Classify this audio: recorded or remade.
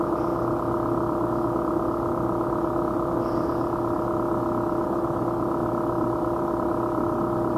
recorded